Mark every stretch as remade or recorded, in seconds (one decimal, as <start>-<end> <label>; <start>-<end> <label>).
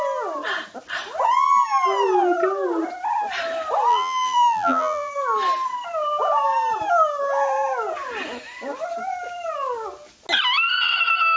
0.0-3.9 recorded; 3.9-5.1 remade; 5.1-11.4 recorded